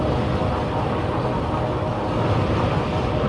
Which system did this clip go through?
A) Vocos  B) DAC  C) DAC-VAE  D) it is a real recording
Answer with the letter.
D